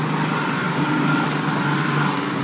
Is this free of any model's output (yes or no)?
yes